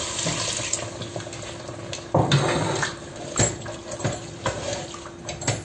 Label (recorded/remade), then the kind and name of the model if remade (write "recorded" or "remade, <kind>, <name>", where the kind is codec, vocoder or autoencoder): recorded